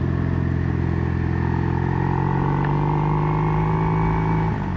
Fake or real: real